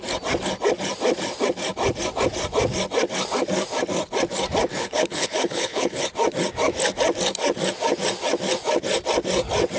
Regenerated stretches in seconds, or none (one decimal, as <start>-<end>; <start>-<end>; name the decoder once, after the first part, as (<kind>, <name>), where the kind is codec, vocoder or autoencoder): 4.7-6.0 (codec, HILCodec)